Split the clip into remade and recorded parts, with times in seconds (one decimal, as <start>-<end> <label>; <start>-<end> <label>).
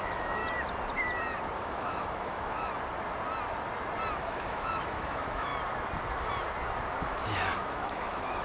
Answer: 0.0-0.4 remade; 0.4-1.6 recorded; 1.6-2.7 remade; 2.7-4.2 recorded; 4.2-5.5 remade; 5.5-7.0 recorded; 7.0-8.4 remade